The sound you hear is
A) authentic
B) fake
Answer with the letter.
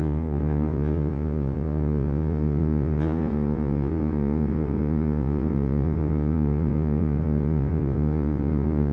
B